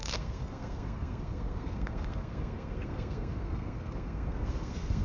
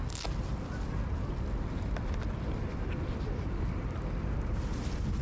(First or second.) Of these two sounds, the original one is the second